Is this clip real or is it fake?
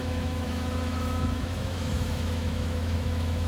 fake